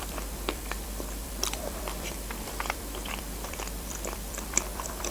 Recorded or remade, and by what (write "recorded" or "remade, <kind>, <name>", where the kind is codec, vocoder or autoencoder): remade, vocoder, BigVGAN v2